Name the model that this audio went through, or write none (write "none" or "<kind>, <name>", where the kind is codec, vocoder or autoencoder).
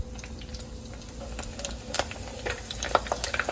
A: none